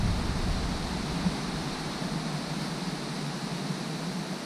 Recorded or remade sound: recorded